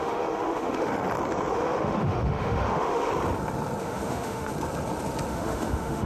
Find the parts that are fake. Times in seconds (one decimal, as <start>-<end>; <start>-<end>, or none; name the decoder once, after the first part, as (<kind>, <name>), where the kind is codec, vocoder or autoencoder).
0.0-0.9 (autoencoder, DAC-VAE); 1.5-3.1; 3.8-4.5; 5.3-6.1